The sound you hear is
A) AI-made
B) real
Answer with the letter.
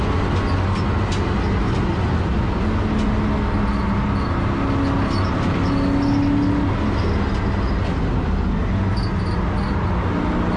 B